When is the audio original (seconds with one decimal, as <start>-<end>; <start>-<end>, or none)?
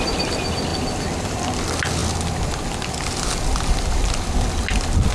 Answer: 0.0-5.1